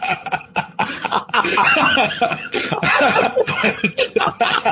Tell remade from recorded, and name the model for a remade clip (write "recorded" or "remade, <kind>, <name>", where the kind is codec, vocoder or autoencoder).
remade, vocoder, HiFi-GAN